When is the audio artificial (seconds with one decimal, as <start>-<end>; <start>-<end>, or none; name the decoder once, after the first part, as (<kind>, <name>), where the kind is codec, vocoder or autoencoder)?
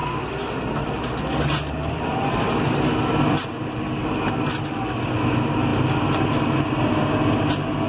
none